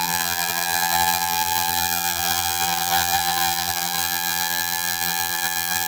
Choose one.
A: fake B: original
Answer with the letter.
A